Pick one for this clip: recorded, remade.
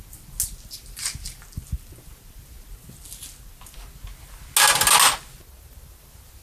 recorded